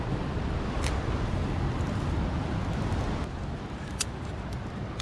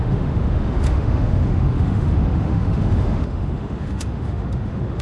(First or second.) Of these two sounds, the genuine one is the first